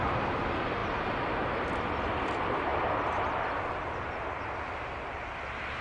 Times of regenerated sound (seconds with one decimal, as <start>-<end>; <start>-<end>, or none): none